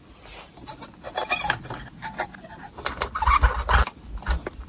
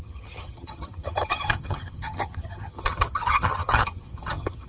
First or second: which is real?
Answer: first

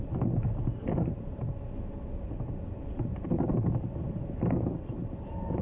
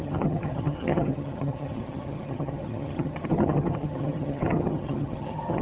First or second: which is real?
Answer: first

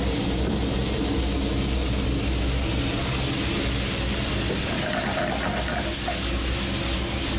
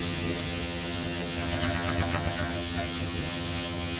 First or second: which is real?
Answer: first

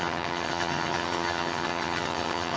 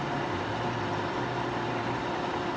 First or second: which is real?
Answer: second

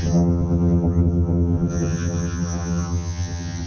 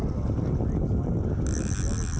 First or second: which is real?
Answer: second